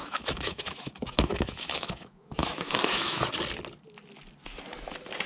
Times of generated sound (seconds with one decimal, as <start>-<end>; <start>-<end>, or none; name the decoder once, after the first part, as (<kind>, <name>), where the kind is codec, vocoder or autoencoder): 0.0-3.2 (autoencoder, DAC-VAE)